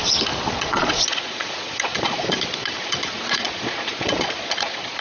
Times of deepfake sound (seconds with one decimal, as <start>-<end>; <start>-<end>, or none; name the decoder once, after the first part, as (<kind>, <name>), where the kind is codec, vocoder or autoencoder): 0.5-5.0 (vocoder, Vocos)